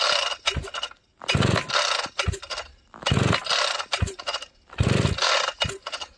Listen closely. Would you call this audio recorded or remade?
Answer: recorded